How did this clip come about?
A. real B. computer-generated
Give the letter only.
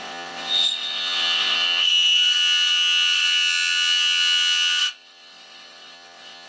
B